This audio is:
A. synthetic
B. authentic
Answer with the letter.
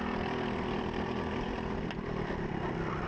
A